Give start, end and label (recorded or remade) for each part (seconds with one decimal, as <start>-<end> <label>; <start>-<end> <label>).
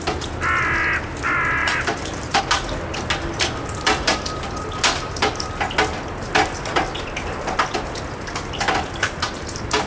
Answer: 0.0-1.6 recorded; 1.6-2.4 remade; 2.4-9.9 recorded